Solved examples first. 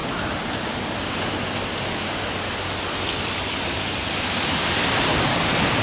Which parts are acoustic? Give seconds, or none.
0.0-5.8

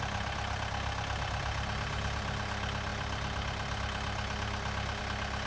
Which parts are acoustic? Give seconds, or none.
0.0-5.5

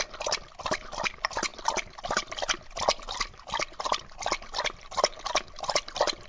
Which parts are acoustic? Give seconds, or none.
0.0-6.3

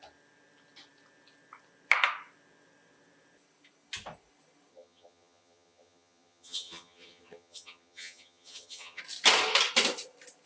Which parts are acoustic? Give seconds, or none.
0.0-4.7; 9.0-10.5